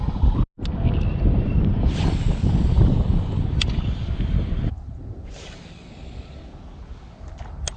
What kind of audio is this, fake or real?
real